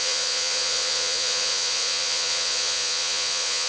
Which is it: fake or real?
fake